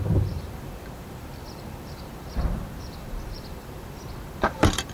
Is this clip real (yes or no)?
no